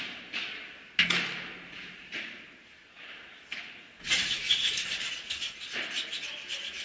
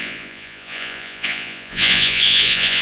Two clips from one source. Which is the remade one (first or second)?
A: second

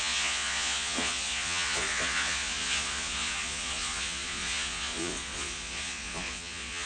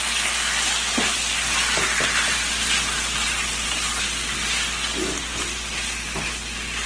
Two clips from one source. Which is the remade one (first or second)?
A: first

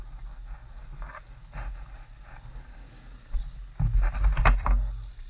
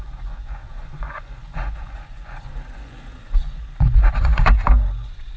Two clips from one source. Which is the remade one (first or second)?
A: second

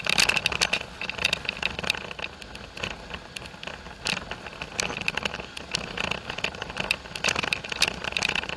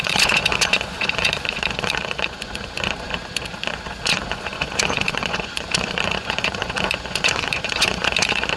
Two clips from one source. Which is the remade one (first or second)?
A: second